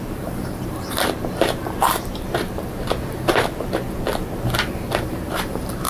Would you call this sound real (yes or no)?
no